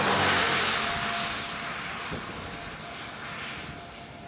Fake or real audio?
real